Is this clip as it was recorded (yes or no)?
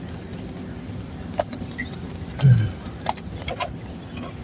yes